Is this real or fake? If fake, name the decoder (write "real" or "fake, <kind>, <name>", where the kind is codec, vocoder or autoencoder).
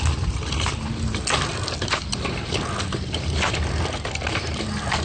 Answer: real